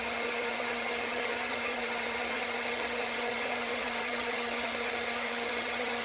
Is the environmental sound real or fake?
fake